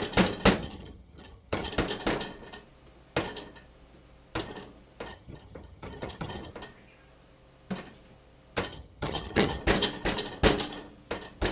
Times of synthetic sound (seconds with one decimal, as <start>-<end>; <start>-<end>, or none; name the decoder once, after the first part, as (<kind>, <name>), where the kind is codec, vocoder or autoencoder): 0.6-1.7 (vocoder, HiFi-GAN); 5.1-6.5; 8.7-9.6